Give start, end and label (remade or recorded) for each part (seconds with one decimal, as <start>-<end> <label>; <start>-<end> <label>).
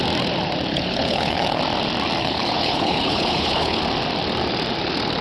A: 0.0-0.7 recorded; 0.7-1.6 remade; 1.6-2.2 recorded; 2.2-3.8 remade; 3.8-5.2 recorded